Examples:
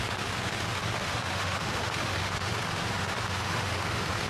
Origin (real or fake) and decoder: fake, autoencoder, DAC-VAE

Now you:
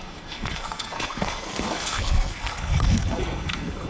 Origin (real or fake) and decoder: fake, codec, SNAC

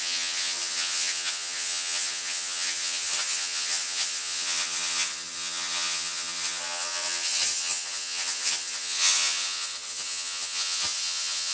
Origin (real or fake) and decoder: fake, vocoder, HiFi-GAN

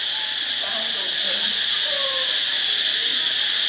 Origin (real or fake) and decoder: real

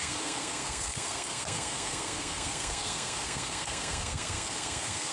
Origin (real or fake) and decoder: fake, codec, SNAC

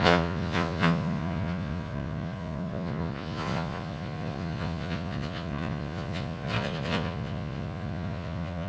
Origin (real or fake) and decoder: fake, vocoder, Vocos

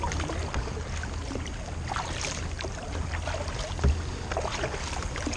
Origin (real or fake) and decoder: real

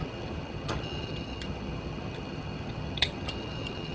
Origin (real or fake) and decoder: fake, vocoder, HiFi-GAN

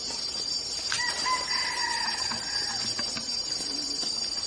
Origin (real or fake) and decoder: real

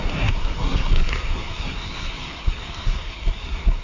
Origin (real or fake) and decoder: fake, codec, SNAC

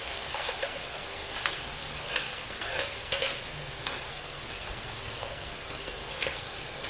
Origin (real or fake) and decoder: fake, codec, SNAC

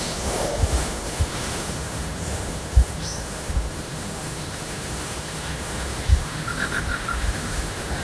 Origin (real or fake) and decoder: fake, autoencoder, DAC-VAE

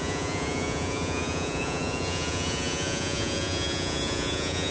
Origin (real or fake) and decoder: fake, vocoder, Vocos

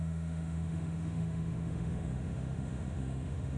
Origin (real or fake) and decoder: fake, autoencoder, DAC-VAE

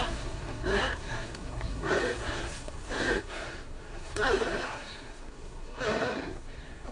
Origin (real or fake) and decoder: fake, codec, SNAC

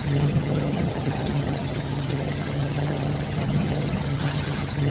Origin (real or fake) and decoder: fake, vocoder, HiFi-GAN